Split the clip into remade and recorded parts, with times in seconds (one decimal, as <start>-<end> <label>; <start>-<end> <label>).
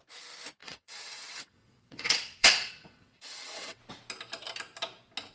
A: 0.0-0.6 recorded; 0.6-3.8 remade; 3.8-5.3 recorded